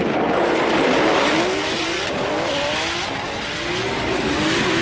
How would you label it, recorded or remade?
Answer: recorded